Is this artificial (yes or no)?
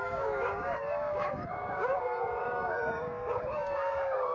yes